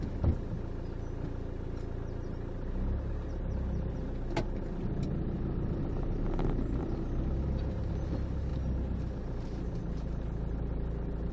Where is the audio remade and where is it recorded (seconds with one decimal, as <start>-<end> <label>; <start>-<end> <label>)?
0.0-11.3 recorded